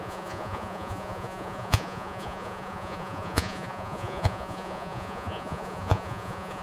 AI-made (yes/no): yes